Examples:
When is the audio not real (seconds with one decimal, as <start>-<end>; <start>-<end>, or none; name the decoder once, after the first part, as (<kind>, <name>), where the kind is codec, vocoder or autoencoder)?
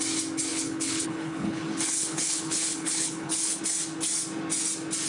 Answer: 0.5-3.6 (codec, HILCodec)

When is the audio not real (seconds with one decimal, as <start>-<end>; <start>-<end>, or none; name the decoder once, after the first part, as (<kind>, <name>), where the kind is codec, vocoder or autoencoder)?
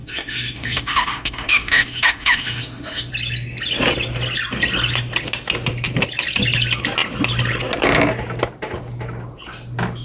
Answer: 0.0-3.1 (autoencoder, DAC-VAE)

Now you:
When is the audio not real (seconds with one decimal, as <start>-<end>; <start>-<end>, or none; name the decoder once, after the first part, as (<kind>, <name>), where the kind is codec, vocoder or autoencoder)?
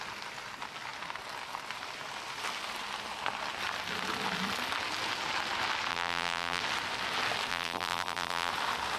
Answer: 5.9-6.6 (vocoder, BigVGAN v2); 7.5-8.5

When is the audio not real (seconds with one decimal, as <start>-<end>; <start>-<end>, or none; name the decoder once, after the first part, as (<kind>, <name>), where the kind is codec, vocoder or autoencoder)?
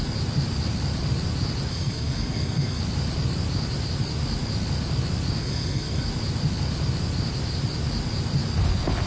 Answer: 1.7-2.8 (codec, SNAC); 5.4-6.1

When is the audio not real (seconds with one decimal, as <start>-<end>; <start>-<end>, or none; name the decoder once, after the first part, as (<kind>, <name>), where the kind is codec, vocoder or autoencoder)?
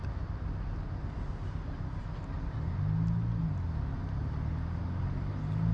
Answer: none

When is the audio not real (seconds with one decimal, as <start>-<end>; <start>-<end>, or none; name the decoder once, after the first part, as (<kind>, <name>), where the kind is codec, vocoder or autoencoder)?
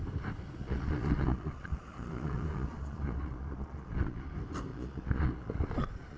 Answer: 0.6-4.3 (vocoder, Vocos); 4.7-6.2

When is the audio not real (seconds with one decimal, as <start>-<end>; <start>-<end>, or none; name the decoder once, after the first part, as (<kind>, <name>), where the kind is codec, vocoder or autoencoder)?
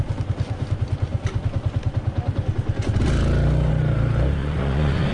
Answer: 4.4-5.1 (vocoder, Vocos)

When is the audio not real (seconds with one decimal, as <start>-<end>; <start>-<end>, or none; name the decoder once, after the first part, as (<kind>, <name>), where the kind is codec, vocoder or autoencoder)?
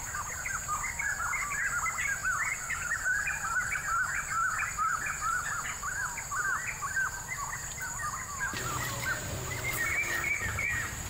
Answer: none